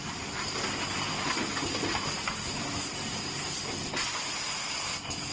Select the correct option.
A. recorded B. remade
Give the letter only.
A